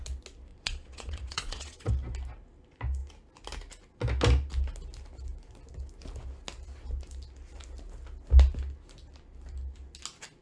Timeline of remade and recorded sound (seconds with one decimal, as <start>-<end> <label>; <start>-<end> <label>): 0.0-0.5 recorded; 0.5-1.9 remade; 1.9-10.4 recorded